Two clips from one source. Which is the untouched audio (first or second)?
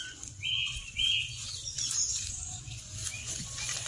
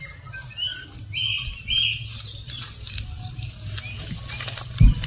second